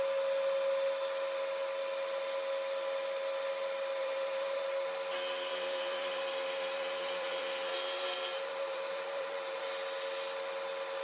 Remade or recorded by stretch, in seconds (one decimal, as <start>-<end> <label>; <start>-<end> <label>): 0.0-4.0 recorded; 4.0-4.6 remade; 4.6-5.5 recorded; 5.5-9.6 remade; 9.6-11.0 recorded